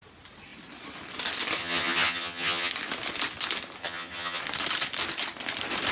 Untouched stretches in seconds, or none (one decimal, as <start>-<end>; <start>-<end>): 0.0-1.6; 2.7-3.8; 4.4-5.9